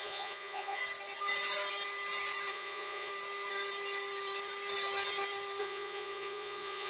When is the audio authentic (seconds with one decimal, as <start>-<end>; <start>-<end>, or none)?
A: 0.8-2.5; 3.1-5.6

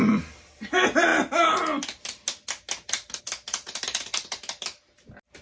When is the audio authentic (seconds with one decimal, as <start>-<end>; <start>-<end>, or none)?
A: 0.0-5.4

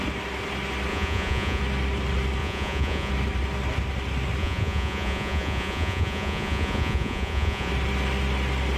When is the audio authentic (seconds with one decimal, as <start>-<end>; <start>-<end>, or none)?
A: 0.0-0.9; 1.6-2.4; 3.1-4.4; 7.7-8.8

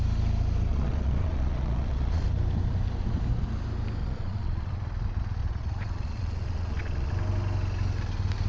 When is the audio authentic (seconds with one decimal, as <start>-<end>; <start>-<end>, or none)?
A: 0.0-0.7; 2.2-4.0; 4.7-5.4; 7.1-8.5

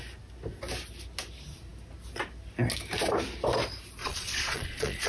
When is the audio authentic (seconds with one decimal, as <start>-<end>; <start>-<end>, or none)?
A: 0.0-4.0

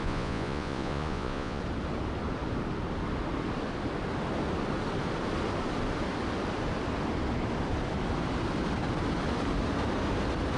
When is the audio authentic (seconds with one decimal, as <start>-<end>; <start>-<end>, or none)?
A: 1.6-10.6